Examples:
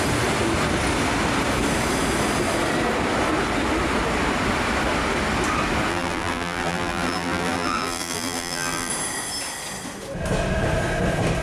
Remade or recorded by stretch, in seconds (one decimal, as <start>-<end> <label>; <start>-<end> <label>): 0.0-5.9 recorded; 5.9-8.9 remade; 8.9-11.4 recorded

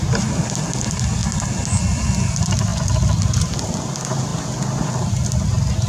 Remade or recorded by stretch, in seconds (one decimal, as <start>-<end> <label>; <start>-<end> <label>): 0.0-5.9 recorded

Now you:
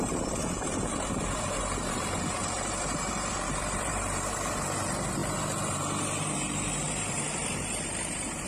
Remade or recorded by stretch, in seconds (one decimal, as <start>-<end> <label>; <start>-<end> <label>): 0.0-8.5 remade